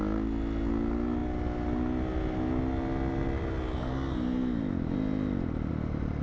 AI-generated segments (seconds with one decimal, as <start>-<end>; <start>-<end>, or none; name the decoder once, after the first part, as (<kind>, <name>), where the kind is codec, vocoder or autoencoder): none